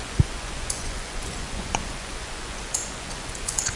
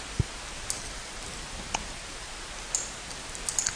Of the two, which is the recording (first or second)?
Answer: second